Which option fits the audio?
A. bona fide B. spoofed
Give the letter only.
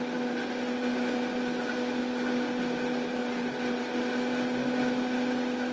A